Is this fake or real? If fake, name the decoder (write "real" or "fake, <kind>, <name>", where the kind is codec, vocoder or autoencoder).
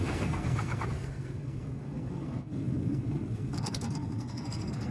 fake, codec, SNAC